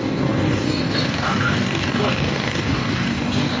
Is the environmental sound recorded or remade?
remade